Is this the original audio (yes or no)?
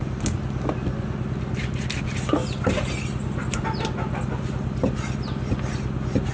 yes